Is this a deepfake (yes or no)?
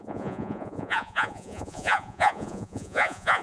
yes